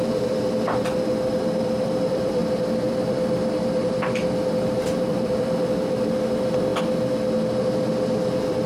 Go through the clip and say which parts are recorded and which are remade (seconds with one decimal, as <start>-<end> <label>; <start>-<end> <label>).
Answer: 0.0-6.7 remade; 6.7-7.9 recorded; 7.9-8.7 remade